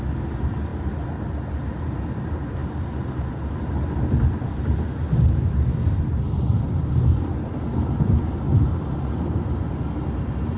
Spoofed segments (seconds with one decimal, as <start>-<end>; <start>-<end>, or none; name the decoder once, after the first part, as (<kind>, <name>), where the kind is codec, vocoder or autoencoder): none